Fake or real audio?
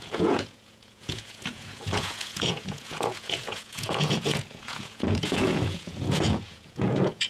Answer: fake